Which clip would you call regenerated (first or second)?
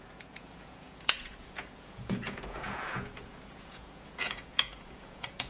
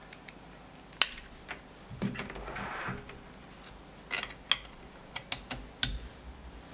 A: first